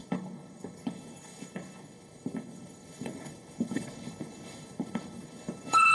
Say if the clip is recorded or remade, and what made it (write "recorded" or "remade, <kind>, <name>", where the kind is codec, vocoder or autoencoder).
remade, codec, HILCodec